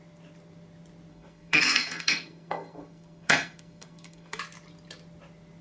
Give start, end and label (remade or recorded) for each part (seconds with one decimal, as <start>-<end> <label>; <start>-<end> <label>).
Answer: 0.0-1.1 recorded; 1.1-4.4 remade; 4.4-5.6 recorded